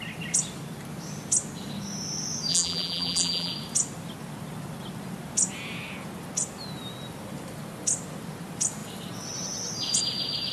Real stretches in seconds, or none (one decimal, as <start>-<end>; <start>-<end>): 0.0-2.5; 3.5-10.5